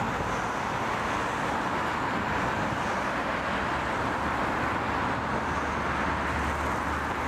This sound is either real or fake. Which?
real